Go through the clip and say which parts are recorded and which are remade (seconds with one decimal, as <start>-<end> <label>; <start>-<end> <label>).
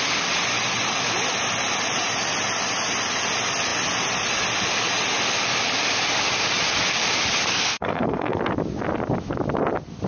0.0-7.5 recorded; 7.5-8.4 remade; 8.4-10.1 recorded